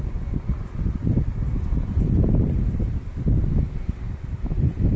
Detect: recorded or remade recorded